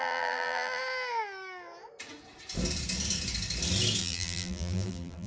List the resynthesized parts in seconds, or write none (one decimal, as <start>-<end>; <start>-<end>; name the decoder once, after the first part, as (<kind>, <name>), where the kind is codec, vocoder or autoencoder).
0.0-0.8 (vocoder, BigVGAN v2); 4.0-5.3